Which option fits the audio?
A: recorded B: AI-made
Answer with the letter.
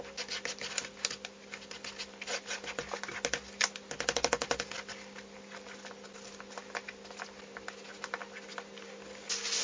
A